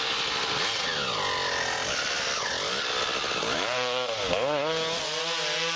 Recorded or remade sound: recorded